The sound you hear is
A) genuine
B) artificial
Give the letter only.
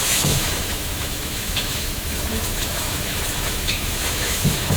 B